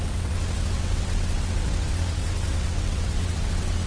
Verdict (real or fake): fake